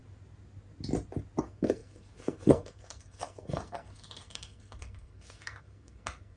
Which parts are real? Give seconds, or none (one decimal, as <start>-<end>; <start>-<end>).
0.0-1.4